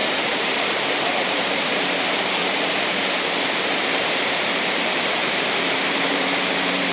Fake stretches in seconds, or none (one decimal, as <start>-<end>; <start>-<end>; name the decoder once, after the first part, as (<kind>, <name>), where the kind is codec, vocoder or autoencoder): 0.0-2.4 (vocoder, BigVGAN v2); 3.6-6.9